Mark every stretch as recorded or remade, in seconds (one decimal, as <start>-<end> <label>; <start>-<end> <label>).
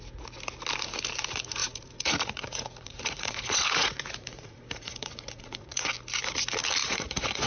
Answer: 0.0-1.6 recorded; 1.6-5.9 remade; 5.9-6.8 recorded; 6.8-7.5 remade